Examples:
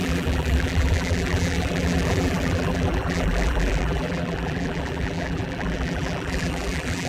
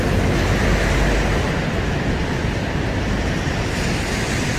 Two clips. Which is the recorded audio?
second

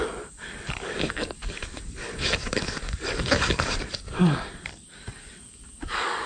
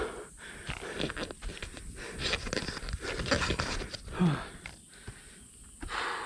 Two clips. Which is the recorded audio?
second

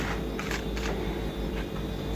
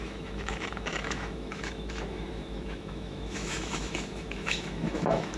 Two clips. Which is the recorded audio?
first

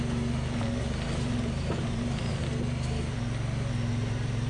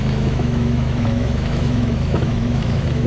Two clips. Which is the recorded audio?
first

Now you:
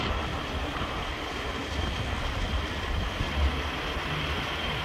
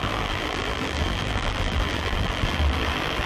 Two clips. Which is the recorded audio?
first